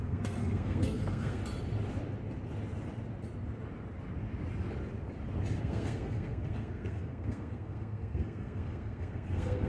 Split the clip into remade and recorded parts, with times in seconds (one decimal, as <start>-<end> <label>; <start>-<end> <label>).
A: 0.0-1.4 remade; 1.4-5.6 recorded; 5.6-9.7 remade